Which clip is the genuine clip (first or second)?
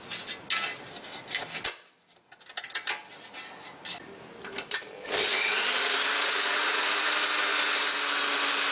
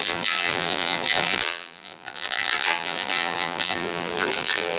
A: first